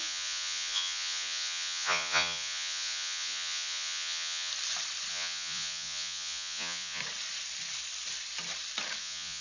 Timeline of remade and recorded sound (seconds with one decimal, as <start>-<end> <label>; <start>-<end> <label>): 0.0-4.5 remade; 4.5-5.1 recorded; 5.1-7.0 remade; 7.0-9.0 recorded; 9.0-9.4 remade